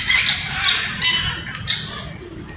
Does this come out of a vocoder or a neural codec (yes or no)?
no